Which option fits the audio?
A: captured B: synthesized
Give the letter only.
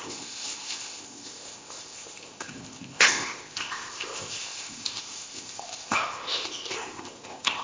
B